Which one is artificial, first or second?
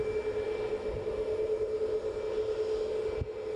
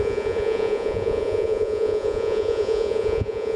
second